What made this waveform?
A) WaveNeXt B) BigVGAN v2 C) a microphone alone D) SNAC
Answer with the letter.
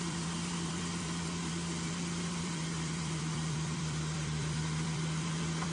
B